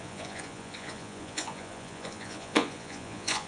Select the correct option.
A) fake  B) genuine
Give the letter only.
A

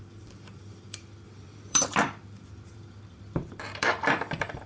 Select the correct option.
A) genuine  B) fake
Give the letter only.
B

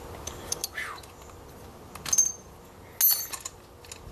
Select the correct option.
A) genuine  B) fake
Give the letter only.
A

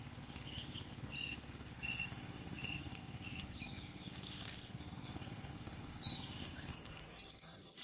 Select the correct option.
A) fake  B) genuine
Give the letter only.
A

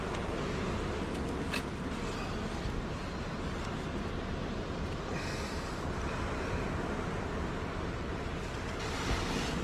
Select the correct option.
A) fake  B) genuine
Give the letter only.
B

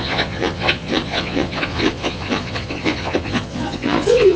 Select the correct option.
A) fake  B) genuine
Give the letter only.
A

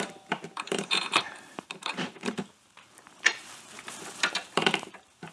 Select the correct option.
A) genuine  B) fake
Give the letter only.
B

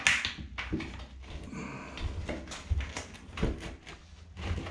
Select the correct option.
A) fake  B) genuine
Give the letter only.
B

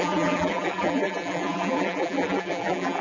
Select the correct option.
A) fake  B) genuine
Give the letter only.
A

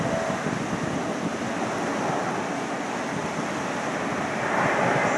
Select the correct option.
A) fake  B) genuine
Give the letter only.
B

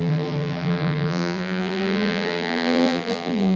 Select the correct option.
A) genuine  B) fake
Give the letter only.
B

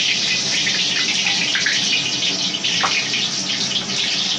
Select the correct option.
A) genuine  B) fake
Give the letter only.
A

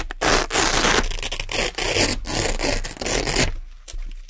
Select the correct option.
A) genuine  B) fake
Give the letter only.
A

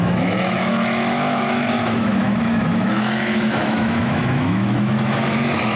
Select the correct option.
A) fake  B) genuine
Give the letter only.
A